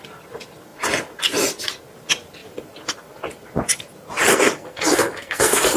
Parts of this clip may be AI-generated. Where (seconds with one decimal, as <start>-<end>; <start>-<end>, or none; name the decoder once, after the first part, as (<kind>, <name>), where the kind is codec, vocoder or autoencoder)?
4.3-5.8 (codec, SNAC)